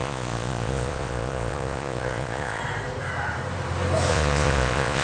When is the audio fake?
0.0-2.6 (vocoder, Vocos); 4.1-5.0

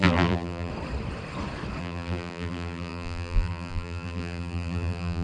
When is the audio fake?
0.0-0.7 (vocoder, BigVGAN v2); 1.8-5.2

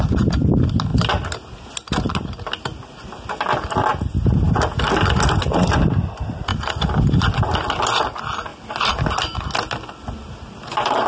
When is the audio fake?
none

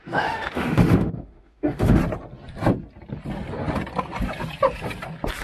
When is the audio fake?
0.0-2.0 (autoencoder, DAC-VAE)

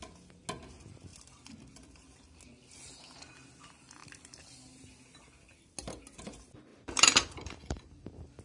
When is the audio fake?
1.1-2.2 (vocoder, BigVGAN v2); 6.7-8.4